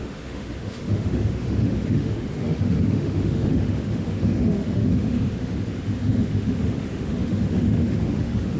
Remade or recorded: remade